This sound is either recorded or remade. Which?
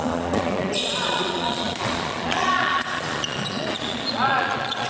remade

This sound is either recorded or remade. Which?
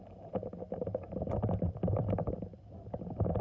recorded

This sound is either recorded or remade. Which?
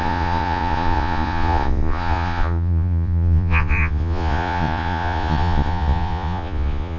remade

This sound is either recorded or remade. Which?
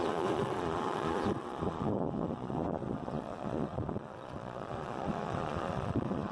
remade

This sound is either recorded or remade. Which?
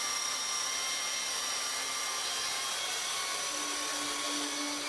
recorded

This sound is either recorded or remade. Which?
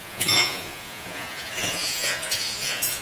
remade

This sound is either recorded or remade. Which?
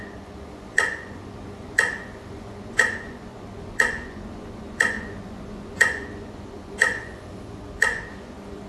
remade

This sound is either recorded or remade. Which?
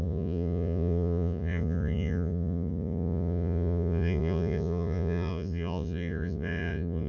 remade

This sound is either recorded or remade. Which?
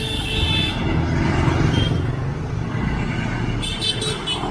recorded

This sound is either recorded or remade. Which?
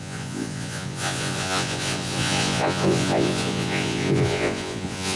remade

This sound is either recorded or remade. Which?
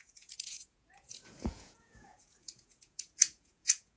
remade